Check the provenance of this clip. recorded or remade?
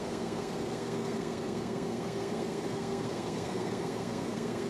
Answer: remade